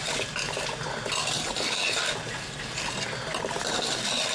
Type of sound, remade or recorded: recorded